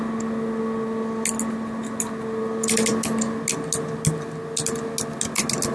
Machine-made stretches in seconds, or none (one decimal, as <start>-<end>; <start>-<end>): none